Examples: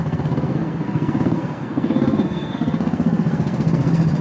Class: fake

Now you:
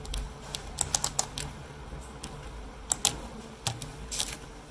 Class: real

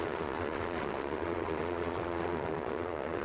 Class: fake